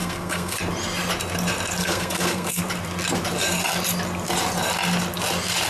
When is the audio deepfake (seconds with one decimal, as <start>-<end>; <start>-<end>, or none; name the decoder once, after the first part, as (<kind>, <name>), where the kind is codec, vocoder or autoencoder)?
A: 0.0-0.6 (codec, SNAC); 1.8-2.6